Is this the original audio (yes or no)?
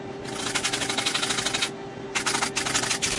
yes